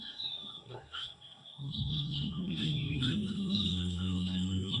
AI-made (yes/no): yes